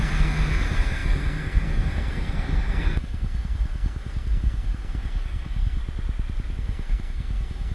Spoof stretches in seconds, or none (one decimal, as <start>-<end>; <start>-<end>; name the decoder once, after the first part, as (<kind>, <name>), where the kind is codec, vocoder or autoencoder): 0.0-5.8 (codec, SNAC); 6.5-7.7